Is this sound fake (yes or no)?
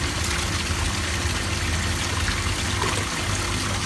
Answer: no